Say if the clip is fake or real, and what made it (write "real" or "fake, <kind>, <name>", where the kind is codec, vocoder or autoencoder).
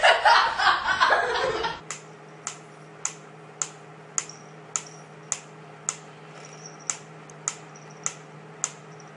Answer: real